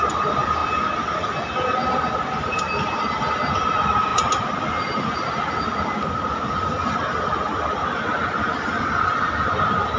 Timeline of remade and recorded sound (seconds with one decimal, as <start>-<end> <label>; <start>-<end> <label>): 0.0-10.0 recorded